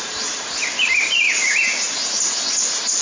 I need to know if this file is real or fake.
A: fake